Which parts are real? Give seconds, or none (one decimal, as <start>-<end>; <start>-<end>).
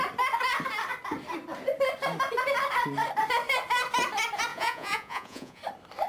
0.0-4.5; 5.6-6.1